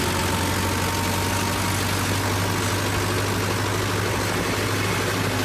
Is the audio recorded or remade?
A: recorded